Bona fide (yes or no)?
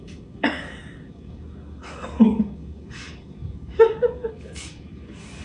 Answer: no